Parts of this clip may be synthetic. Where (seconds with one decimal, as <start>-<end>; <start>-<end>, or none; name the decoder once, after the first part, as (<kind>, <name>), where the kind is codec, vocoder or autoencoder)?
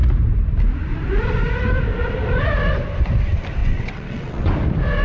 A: 3.6-4.5 (vocoder, WaveNeXt)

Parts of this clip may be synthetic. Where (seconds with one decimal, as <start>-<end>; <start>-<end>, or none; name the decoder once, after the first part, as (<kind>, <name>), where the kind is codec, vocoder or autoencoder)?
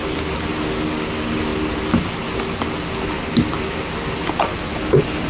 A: none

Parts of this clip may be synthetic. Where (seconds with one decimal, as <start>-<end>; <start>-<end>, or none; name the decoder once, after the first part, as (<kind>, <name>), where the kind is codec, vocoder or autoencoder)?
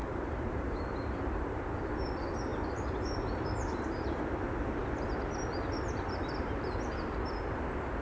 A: 0.0-1.6 (vocoder, BigVGAN v2); 2.5-4.2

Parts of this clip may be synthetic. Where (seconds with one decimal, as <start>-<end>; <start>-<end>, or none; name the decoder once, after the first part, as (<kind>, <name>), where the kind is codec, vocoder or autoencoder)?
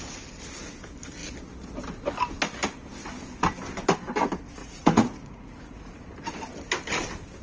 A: 4.6-6.0 (vocoder, Vocos)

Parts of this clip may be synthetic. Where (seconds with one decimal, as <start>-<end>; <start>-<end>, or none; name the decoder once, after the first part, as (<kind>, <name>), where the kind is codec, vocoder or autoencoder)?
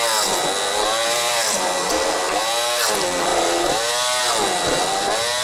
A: 1.0-1.9 (vocoder, BigVGAN v2)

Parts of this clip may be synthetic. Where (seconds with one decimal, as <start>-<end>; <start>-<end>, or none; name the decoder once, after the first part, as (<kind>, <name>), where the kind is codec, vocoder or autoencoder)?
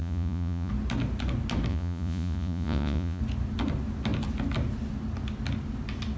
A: 0.0-0.7 (vocoder, Vocos); 1.7-3.2